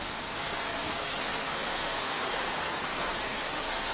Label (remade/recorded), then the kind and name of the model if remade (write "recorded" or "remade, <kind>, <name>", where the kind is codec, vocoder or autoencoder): remade, codec, SNAC